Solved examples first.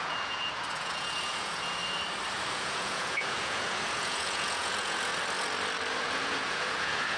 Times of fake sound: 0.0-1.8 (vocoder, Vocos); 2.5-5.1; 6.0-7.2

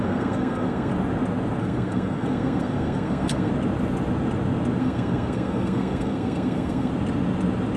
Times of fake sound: 0.0-0.9 (codec, SNAC); 1.6-3.5; 4.8-6.9

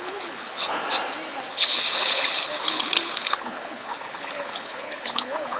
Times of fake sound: 0.0-0.8 (codec, HILCodec); 1.5-5.6

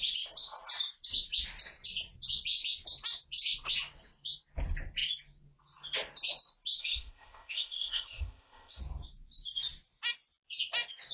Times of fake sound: 6.8-8.8 (codec, ZipCodec)

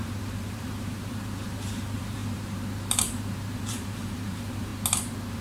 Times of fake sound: 0.0-4.7 (vocoder, BigVGAN v2)

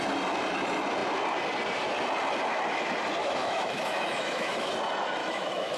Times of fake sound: 3.2-4.7 (autoencoder, DAC-VAE); 5.2-5.8